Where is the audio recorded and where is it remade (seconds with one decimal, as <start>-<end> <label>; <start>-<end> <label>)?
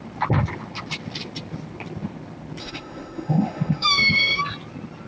0.0-2.6 recorded; 2.6-4.4 remade; 4.4-5.1 recorded